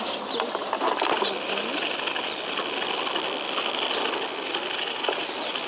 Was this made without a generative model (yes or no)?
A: yes